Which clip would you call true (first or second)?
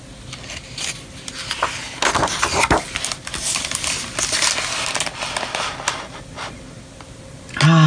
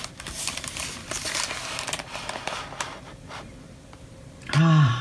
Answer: first